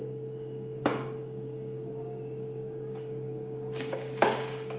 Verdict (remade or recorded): remade